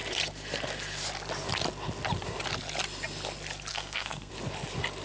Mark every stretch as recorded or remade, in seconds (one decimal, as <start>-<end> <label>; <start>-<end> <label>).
0.0-3.7 recorded; 3.7-4.3 remade; 4.3-5.0 recorded